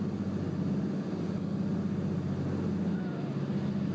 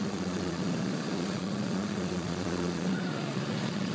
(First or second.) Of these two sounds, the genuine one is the first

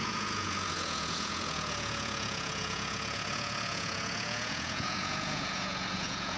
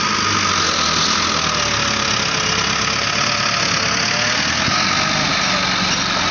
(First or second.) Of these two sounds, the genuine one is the second